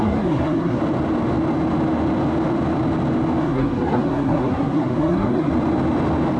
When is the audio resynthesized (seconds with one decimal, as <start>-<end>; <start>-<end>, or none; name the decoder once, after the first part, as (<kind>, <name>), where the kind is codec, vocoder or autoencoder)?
0.0-0.8 (codec, SNAC); 3.4-5.5